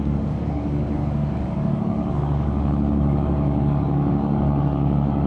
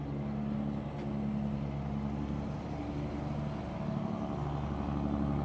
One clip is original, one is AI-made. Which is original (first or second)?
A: second